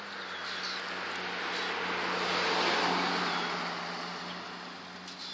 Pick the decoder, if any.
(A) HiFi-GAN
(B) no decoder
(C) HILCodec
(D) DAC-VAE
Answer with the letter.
B